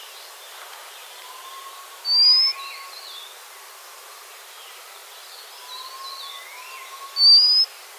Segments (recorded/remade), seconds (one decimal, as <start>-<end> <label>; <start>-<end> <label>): 0.0-1.2 remade; 1.2-3.8 recorded; 3.8-5.0 remade; 5.0-8.0 recorded